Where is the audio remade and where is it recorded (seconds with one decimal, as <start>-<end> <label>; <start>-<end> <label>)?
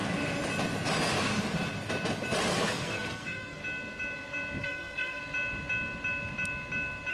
0.0-2.5 recorded; 2.5-3.6 remade; 3.6-4.6 recorded; 4.6-5.2 remade; 5.2-7.1 recorded